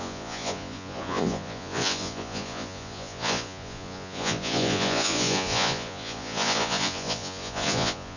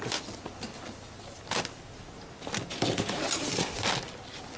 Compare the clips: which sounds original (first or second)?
second